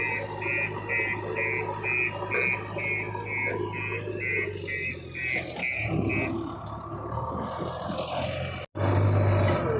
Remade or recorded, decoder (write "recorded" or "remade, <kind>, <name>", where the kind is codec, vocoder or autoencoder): recorded